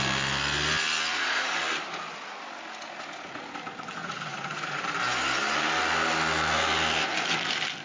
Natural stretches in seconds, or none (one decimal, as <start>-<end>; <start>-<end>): 0.0-1.1; 1.6-4.0; 4.8-7.8